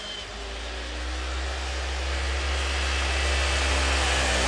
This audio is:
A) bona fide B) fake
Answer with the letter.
A